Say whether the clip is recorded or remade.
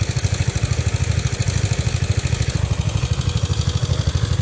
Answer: recorded